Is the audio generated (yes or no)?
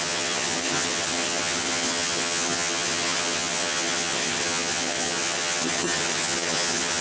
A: yes